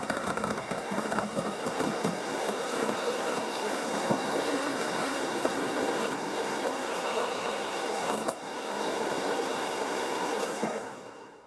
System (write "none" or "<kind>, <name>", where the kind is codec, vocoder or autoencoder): codec, SNAC